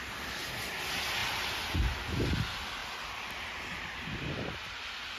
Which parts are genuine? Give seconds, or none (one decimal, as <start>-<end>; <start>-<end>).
0.0-5.2